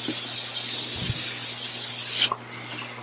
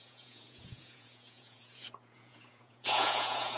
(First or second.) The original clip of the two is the first